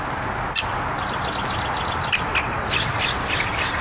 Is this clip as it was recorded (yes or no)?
yes